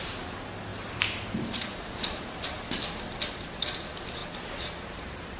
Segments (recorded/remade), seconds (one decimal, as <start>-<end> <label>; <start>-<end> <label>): 0.0-0.7 recorded; 0.7-2.6 remade; 2.6-5.4 recorded